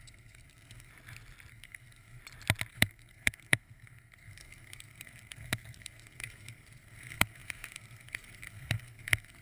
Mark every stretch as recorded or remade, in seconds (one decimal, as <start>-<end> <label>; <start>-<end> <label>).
0.0-0.9 remade; 0.9-1.5 recorded; 1.5-2.2 remade; 2.2-2.7 recorded; 2.7-9.4 remade